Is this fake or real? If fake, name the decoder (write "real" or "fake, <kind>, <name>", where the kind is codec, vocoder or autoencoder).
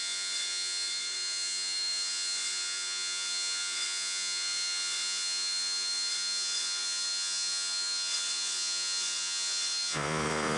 fake, vocoder, Vocos